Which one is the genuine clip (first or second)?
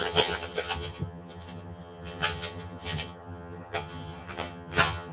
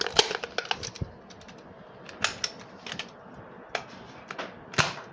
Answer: second